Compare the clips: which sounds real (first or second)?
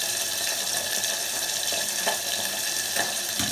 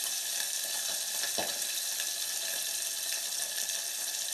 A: second